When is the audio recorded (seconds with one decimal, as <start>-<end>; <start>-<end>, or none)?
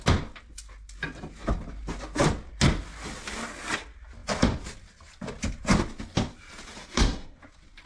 0.0-6.8; 7.4-7.9